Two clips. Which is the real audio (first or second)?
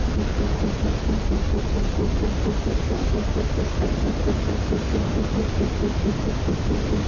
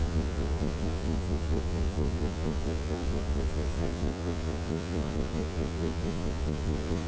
first